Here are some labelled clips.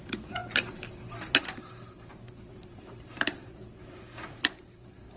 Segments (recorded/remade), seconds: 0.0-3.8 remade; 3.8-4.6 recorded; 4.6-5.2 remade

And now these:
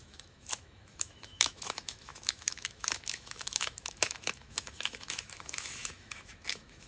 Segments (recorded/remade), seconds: 0.0-6.9 remade

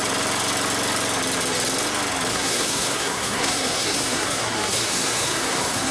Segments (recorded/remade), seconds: 0.0-2.3 recorded; 2.3-5.9 remade

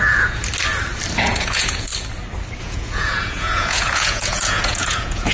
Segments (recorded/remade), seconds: 0.0-0.4 remade; 0.4-1.2 recorded; 1.2-1.9 remade; 1.9-2.6 recorded; 2.6-5.3 remade